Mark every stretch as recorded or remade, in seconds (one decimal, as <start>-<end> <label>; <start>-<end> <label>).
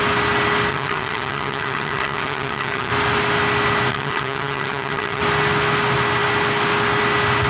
0.0-0.7 recorded; 0.7-2.9 remade; 2.9-3.9 recorded; 3.9-5.2 remade; 5.2-7.5 recorded